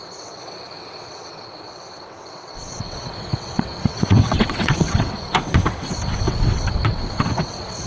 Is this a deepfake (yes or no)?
yes